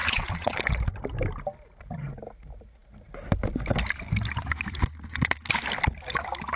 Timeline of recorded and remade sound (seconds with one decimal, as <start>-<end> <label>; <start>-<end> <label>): 0.0-0.6 remade; 0.6-6.6 recorded